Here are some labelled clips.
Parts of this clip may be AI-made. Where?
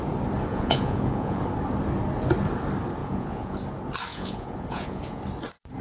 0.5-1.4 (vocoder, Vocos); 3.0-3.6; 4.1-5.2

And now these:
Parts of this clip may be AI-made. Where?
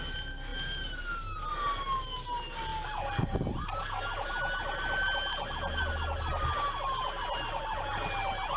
none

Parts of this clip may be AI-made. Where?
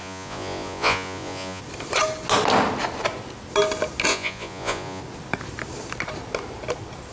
0.0-1.6 (vocoder, Vocos); 4.1-5.0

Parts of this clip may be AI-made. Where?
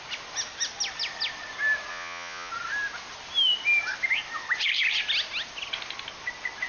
1.9-2.5 (vocoder, Vocos)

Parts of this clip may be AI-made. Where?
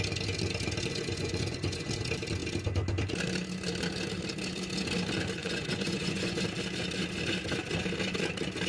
0.9-1.9 (vocoder, Vocos); 5.4-6.4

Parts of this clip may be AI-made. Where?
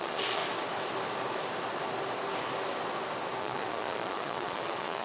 0.0-0.4 (vocoder, Vocos); 3.4-5.0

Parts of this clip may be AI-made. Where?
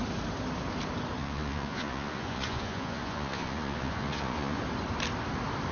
1.2-4.6 (vocoder, Vocos)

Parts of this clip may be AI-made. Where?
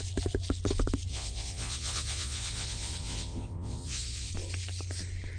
1.1-4.3 (vocoder, Vocos)